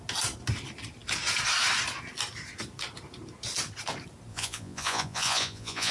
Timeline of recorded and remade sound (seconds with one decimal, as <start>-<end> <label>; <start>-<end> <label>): 0.0-4.3 recorded; 4.3-5.9 remade